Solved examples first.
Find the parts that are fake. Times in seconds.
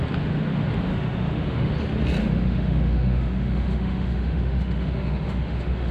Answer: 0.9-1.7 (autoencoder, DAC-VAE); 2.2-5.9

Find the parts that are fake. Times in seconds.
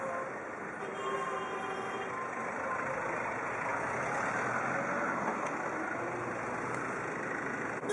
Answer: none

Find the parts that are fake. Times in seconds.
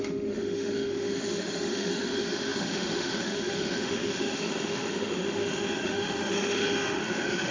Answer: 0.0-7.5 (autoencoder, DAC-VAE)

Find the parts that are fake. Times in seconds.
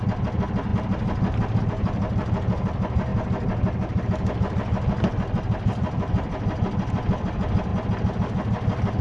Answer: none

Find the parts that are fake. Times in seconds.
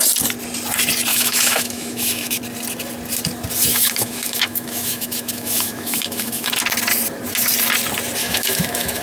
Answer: 1.1-2.4 (autoencoder, DAC-VAE); 3.7-6.5; 8.2-9.0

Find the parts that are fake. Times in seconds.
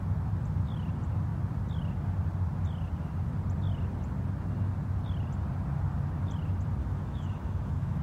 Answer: 6.8-8.0 (autoencoder, DAC-VAE)